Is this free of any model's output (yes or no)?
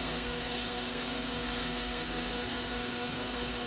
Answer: no